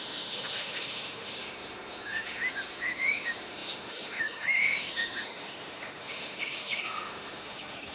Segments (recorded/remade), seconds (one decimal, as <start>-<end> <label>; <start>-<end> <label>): 0.0-7.9 remade